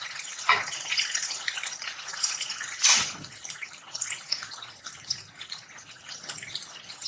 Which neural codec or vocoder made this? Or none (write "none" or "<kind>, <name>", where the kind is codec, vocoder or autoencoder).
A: vocoder, Vocos